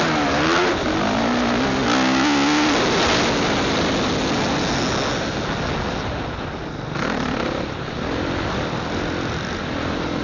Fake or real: real